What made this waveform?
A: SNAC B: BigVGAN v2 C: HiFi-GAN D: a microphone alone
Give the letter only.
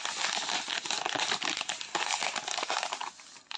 D